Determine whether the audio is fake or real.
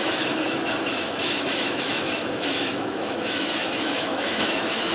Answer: fake